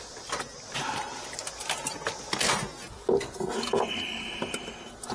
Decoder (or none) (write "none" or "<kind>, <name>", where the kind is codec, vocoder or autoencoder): none